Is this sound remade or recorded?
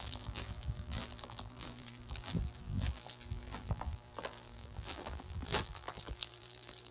remade